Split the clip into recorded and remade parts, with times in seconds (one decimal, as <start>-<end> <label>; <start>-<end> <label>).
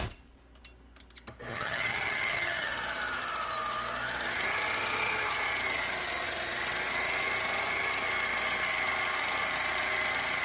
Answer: 0.0-1.5 recorded; 1.5-2.7 remade; 2.7-10.4 recorded